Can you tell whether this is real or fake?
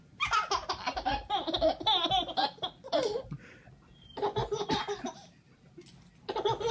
real